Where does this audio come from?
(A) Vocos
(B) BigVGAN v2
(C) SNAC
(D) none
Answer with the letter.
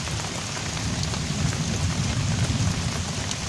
D